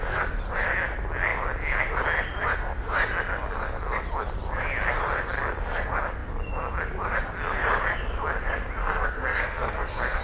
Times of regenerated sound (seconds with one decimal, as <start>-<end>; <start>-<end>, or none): 8.8-10.2